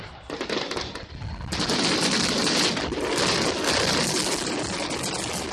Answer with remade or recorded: recorded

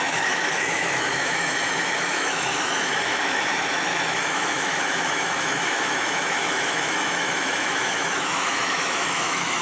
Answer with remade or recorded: remade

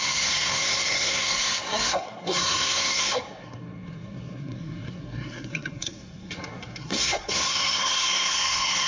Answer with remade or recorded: remade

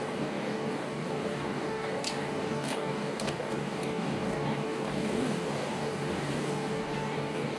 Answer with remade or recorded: remade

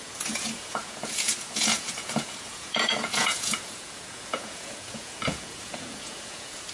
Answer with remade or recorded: remade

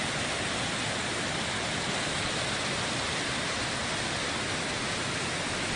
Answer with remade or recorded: recorded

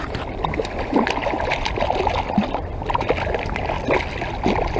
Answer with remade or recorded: recorded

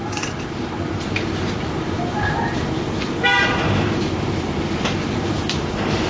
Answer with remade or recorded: remade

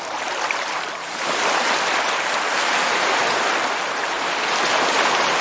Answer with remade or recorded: recorded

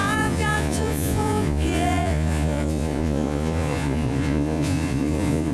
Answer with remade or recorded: remade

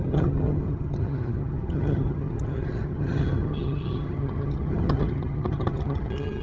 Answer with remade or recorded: remade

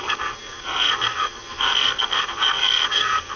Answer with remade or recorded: remade